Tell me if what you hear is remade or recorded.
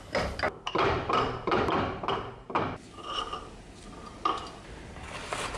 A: recorded